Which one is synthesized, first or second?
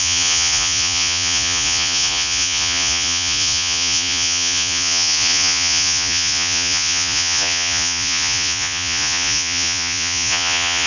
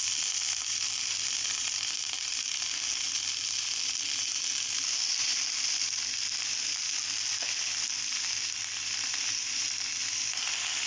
first